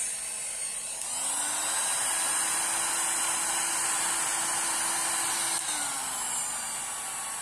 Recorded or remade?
recorded